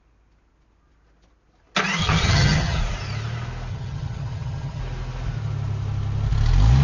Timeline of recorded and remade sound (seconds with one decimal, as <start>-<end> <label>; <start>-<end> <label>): 0.0-2.0 recorded; 2.0-2.8 remade; 2.8-3.7 recorded; 3.7-4.8 remade; 4.8-6.8 recorded